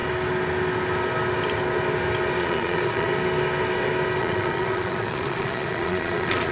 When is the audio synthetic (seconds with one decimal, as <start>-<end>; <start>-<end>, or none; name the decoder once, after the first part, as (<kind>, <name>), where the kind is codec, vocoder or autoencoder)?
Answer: 2.4-3.1 (vocoder, Vocos); 4.2-6.5